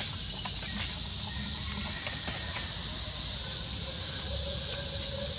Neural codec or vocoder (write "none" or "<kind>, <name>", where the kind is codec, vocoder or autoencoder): none